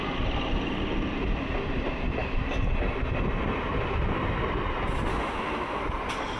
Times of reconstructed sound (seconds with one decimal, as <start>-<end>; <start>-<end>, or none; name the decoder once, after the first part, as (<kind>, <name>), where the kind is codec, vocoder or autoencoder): 5.1-5.8 (autoencoder, DAC-VAE)